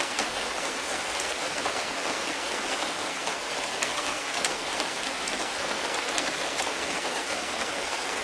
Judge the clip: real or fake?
fake